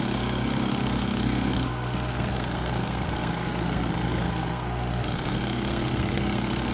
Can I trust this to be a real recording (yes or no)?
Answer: no